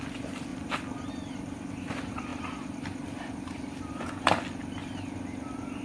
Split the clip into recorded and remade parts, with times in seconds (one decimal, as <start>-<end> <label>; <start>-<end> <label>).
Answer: 0.0-5.8 recorded